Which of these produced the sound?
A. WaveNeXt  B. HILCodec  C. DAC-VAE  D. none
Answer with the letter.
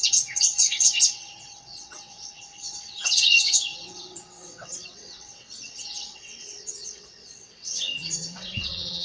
A